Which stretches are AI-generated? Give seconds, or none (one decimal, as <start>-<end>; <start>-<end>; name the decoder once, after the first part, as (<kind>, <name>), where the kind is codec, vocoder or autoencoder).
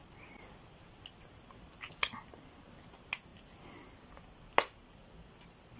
none